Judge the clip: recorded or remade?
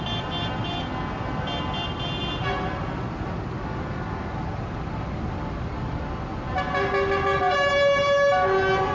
recorded